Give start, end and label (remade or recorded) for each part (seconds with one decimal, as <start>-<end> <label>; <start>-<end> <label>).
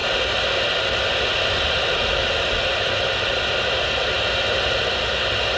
0.0-5.6 recorded